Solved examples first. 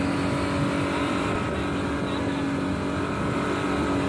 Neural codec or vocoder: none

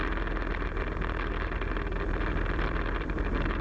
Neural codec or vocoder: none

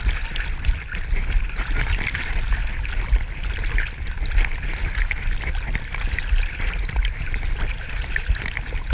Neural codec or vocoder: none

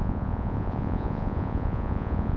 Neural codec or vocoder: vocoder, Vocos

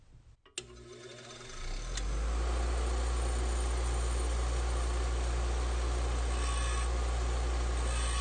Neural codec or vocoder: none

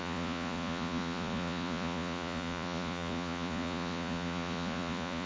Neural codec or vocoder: vocoder, Vocos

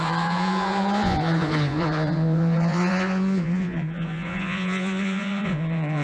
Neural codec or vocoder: vocoder, Vocos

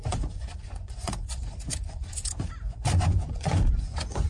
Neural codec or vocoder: vocoder, Vocos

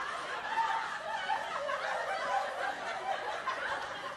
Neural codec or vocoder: vocoder, Vocos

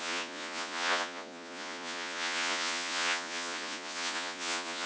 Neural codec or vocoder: vocoder, Vocos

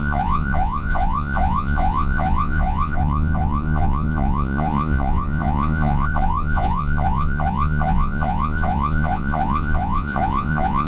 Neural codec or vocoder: vocoder, Vocos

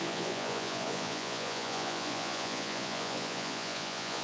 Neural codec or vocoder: vocoder, Vocos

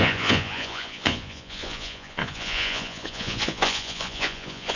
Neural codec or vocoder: vocoder, Vocos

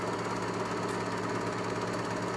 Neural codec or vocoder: none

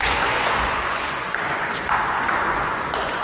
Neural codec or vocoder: vocoder, Vocos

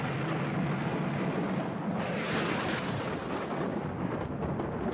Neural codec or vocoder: none